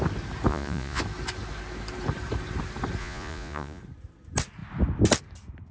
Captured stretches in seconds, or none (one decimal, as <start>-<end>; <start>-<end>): 0.0-0.5; 1.0-3.0; 3.8-5.7